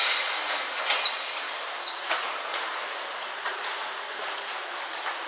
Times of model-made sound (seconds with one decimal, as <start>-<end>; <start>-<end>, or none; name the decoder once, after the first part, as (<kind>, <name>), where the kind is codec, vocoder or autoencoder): 0.0-0.4 (vocoder, Vocos); 2.0-5.3